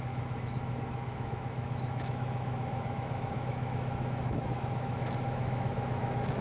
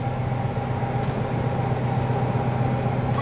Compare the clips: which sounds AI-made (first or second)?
first